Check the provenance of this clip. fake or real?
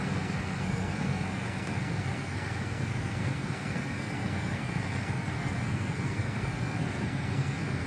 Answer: fake